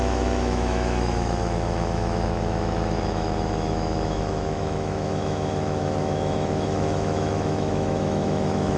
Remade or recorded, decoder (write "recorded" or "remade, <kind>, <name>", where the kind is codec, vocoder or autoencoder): remade, autoencoder, DAC-VAE